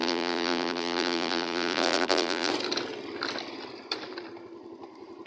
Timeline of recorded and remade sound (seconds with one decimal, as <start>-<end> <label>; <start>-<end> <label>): 0.0-2.5 remade; 2.5-5.3 recorded